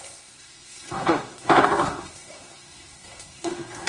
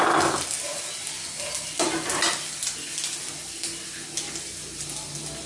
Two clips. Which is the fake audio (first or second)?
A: first